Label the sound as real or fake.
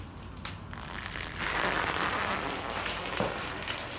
real